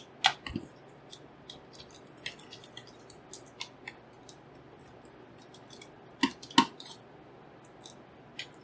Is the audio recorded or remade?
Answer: recorded